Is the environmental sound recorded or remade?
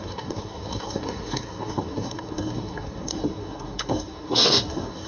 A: remade